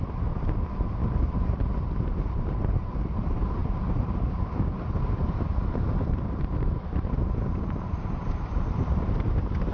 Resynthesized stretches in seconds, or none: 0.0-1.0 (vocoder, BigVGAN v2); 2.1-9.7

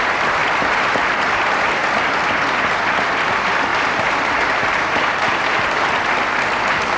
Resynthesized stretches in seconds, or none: 3.7-6.1 (vocoder, BigVGAN v2)

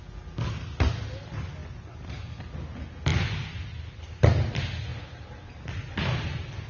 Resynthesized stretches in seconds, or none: 1.6-2.4 (vocoder, BigVGAN v2); 4.9-6.0